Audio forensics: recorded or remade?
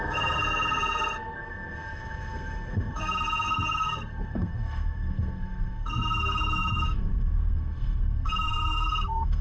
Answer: remade